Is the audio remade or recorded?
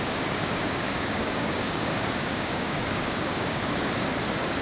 remade